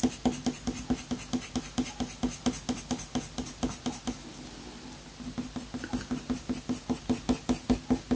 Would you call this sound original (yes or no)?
yes